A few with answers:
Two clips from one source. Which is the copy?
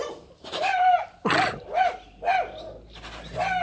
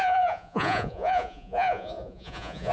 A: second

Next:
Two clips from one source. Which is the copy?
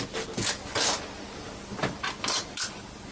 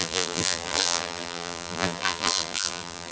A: second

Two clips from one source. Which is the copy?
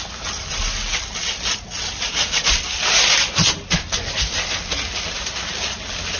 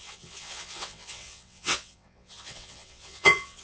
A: second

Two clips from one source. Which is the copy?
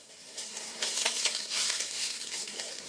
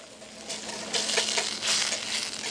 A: first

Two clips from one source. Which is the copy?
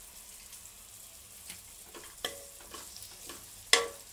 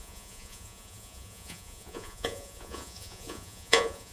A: second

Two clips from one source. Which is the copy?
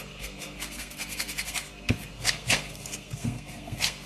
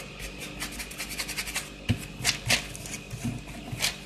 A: first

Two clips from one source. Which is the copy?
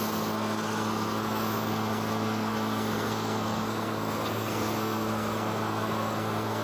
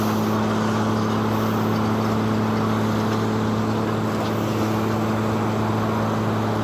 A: first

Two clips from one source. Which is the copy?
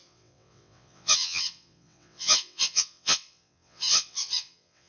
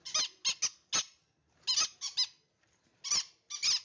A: first